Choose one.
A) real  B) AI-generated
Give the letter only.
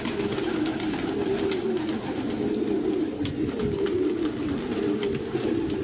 A